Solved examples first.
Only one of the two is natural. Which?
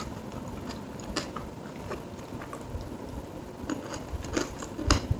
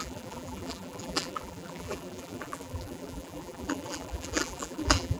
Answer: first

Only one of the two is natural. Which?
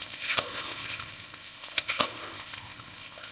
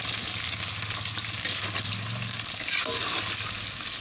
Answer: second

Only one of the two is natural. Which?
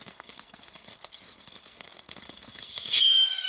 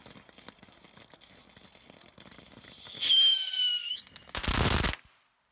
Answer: second